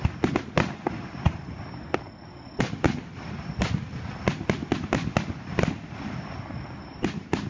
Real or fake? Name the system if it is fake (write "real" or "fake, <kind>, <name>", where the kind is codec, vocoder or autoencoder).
real